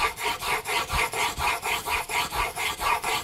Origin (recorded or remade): remade